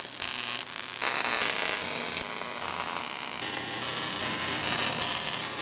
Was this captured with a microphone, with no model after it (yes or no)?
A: yes